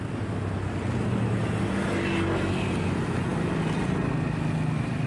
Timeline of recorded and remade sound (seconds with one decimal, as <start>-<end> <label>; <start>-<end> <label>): 0.0-5.1 recorded